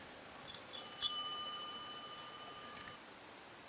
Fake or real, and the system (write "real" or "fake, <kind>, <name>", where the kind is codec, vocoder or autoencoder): real